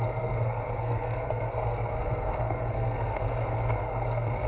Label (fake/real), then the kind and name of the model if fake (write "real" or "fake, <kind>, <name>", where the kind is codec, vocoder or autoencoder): fake, codec, SNAC